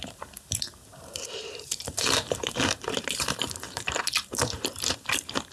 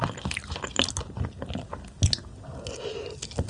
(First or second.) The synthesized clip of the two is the first